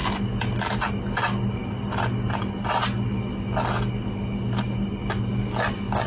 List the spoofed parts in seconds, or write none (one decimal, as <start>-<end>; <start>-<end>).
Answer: none